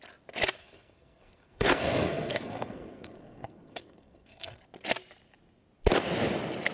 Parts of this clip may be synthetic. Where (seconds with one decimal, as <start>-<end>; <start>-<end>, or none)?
0.6-4.6